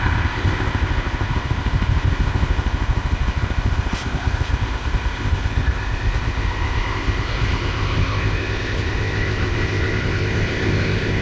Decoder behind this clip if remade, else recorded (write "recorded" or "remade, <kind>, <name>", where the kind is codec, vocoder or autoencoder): remade, codec, ZipCodec